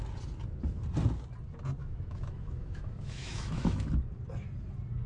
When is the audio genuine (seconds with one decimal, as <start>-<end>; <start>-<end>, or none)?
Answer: 0.0-1.8; 3.9-5.1